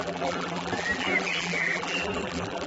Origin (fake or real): fake